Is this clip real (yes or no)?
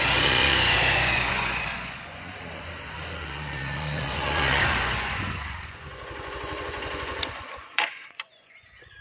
no